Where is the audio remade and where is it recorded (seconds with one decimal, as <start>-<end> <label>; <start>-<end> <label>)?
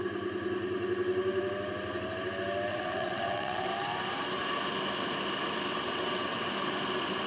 0.0-2.7 recorded; 2.7-3.7 remade; 3.7-5.7 recorded; 5.7-6.5 remade; 6.5-7.3 recorded